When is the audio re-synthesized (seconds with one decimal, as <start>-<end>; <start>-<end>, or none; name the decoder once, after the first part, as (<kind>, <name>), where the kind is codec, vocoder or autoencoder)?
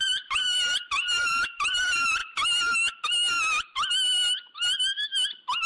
0.0-2.2 (vocoder, BigVGAN v2)